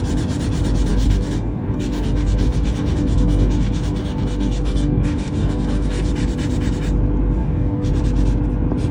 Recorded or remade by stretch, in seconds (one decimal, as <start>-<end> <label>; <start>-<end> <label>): 0.0-0.9 recorded; 0.9-6.1 remade; 6.1-7.4 recorded; 7.4-7.9 remade; 7.9-8.9 recorded